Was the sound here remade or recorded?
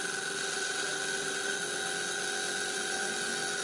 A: recorded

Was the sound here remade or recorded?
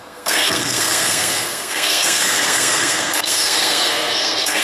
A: remade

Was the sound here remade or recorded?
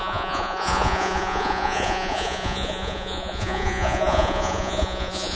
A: remade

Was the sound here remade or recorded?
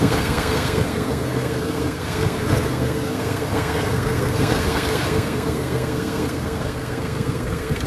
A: remade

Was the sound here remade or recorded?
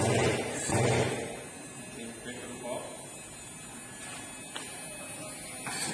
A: recorded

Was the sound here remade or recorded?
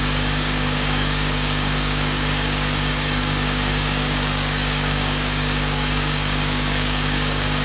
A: remade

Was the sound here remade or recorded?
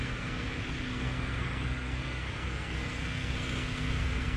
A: remade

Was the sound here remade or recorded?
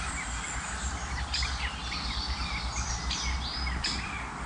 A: recorded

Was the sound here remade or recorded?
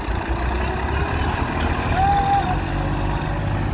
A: recorded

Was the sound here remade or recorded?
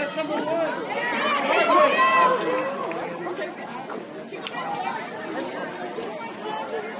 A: recorded